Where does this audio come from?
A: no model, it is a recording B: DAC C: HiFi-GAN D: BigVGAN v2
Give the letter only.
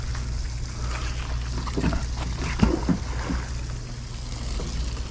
A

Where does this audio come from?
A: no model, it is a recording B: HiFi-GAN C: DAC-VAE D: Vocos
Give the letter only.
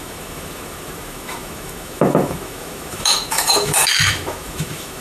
C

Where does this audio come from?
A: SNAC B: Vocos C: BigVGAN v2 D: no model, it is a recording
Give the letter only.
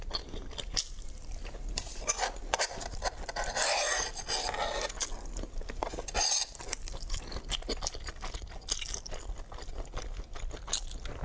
D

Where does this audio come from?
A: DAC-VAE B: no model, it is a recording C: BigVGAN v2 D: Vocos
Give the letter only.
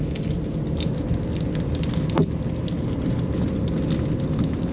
B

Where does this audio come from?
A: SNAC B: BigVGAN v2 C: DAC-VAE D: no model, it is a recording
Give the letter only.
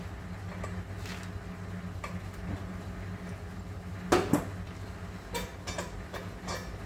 D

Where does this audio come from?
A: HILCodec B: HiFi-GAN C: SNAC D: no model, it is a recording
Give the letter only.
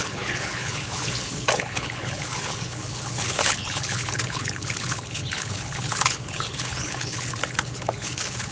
A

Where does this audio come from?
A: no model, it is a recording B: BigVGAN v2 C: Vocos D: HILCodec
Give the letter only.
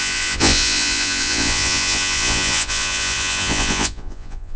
C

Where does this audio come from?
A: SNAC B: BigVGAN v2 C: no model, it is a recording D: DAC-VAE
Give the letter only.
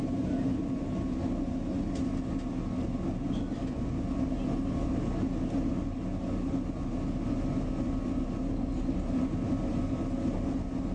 C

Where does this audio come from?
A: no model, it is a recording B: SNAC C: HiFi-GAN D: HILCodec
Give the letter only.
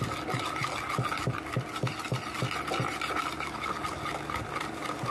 A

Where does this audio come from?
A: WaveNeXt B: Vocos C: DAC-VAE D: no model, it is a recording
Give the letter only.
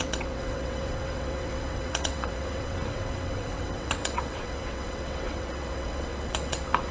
A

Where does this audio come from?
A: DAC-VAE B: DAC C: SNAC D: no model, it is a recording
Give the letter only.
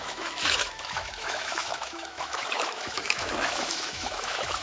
A